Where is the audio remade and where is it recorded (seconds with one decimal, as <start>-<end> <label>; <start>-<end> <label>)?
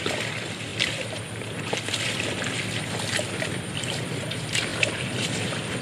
0.0-5.8 remade